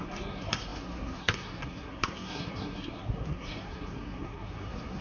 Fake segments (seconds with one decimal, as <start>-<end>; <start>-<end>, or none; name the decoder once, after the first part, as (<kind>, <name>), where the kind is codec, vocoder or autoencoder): 0.0-5.0 (codec, SNAC)